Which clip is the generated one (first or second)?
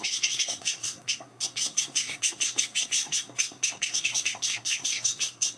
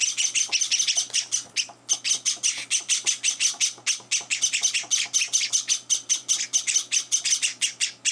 first